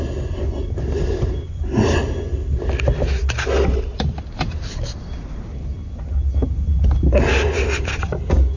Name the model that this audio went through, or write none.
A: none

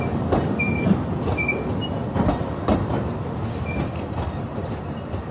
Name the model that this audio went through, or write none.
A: none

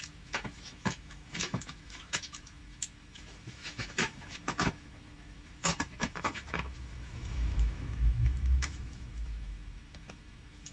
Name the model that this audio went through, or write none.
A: autoencoder, DAC-VAE